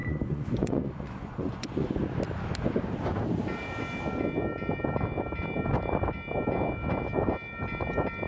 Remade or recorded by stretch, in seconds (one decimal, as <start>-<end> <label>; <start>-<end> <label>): 0.0-2.0 remade; 2.0-8.3 recorded